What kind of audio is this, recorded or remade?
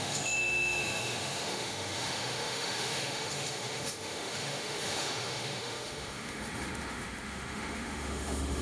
remade